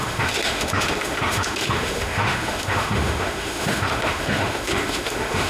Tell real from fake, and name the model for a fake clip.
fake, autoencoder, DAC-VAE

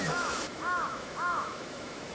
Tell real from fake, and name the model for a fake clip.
fake, autoencoder, DAC-VAE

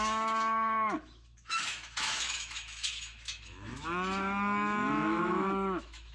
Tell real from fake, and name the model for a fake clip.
fake, autoencoder, DAC-VAE